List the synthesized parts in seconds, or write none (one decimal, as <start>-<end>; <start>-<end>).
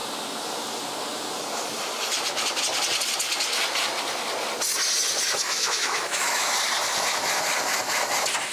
5.4-6.5